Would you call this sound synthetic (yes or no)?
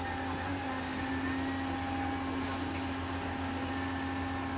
no